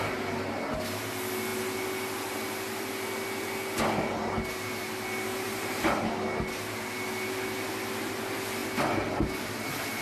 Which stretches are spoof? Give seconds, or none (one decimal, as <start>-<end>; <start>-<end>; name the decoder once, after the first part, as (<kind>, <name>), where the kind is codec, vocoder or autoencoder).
5.3-6.1 (vocoder, BigVGAN v2)